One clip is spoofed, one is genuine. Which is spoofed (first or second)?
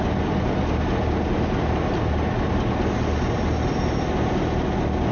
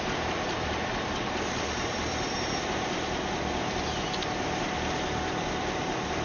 second